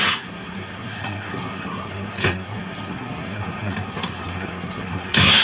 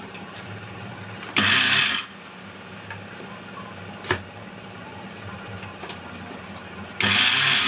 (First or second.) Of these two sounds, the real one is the second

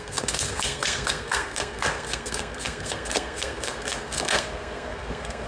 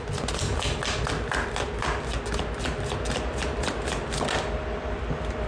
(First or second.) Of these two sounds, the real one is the second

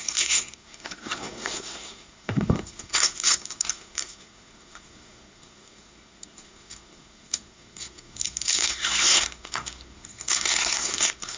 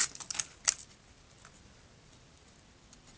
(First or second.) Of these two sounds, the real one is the second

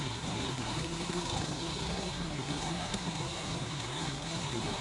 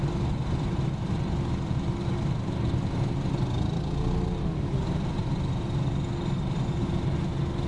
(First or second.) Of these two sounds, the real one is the second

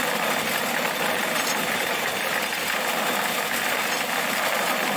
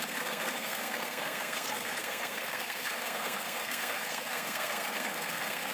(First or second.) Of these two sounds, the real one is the first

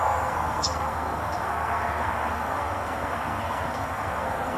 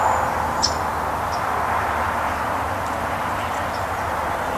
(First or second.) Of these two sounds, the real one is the second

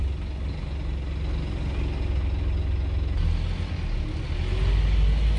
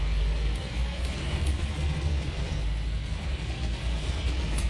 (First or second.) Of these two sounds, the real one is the first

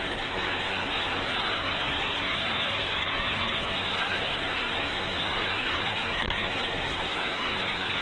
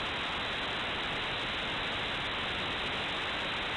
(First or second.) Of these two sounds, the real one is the second